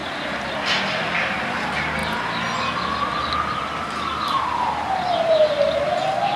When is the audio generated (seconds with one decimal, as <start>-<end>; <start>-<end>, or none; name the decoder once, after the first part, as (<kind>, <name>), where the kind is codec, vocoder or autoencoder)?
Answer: none